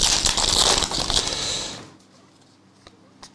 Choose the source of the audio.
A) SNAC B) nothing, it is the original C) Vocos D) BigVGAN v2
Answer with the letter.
B